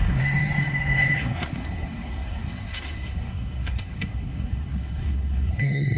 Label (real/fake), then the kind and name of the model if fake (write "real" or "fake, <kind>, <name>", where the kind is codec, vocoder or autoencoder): fake, codec, SNAC